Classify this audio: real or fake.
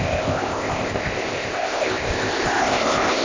fake